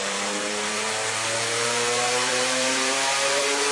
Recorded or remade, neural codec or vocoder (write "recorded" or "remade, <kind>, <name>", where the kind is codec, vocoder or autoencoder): remade, vocoder, BigVGAN v2